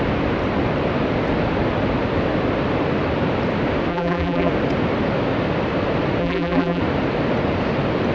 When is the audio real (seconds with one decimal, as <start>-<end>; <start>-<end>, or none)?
0.0-3.9; 4.5-6.2; 6.8-8.1